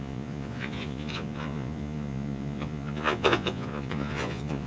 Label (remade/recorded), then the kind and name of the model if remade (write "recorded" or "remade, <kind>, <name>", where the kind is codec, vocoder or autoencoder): remade, vocoder, Vocos